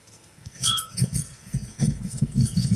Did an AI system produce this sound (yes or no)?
yes